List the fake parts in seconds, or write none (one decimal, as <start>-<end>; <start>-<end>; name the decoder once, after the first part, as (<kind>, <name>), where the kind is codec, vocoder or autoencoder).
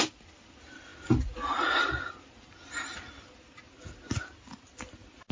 none